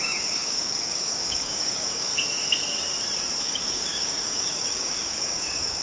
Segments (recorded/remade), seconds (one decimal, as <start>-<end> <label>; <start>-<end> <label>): 0.0-2.1 remade; 2.1-3.4 recorded; 3.4-5.8 remade

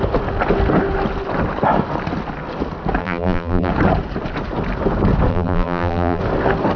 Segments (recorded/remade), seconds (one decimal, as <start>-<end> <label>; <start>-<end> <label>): 0.0-3.0 recorded; 3.0-3.7 remade; 3.7-5.3 recorded; 5.3-6.2 remade; 6.2-6.8 recorded